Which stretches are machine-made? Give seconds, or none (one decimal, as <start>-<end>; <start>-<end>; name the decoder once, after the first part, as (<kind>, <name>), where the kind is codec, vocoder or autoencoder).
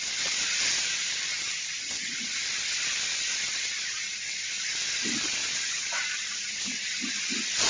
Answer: none